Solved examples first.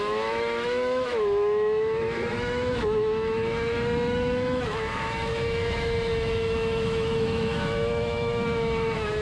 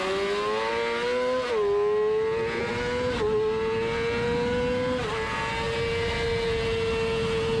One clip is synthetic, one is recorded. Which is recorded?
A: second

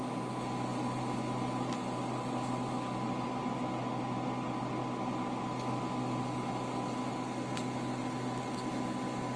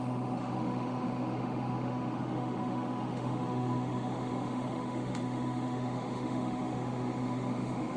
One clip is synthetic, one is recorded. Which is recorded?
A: first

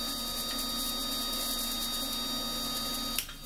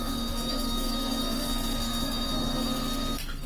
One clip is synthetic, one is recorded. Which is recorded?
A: first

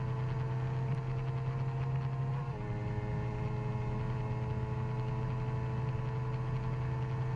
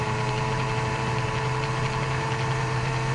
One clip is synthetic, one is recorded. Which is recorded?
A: first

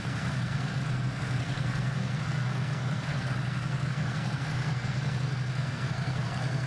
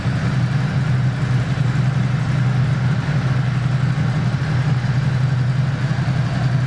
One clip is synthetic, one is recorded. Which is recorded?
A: second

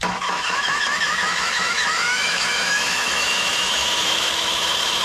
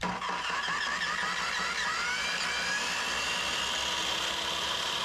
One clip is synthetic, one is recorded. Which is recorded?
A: second